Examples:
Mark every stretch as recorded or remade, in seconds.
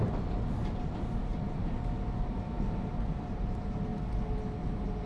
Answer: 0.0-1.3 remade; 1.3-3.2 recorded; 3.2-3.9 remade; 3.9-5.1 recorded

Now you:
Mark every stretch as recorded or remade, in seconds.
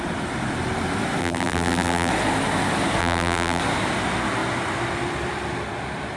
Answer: 0.0-1.2 recorded; 1.2-2.1 remade; 2.1-3.0 recorded; 3.0-3.6 remade; 3.6-6.2 recorded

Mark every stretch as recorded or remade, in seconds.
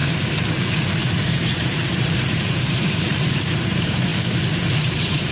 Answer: 0.0-4.1 remade; 4.1-4.8 recorded; 4.8-5.3 remade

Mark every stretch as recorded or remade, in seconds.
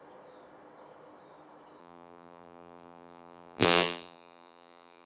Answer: 0.0-1.8 recorded; 1.8-5.1 remade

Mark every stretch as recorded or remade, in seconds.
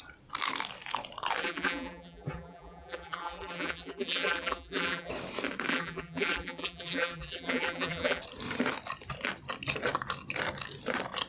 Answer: 0.0-1.4 recorded; 1.4-5.1 remade; 5.1-5.7 recorded; 5.7-8.2 remade; 8.2-11.3 recorded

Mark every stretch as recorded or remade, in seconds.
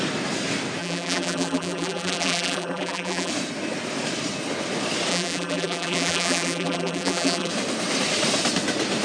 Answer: 0.0-0.8 recorded; 0.8-3.3 remade; 3.3-5.1 recorded; 5.1-7.5 remade; 7.5-9.0 recorded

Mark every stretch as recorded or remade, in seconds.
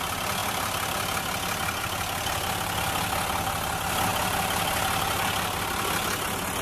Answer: 0.0-6.6 recorded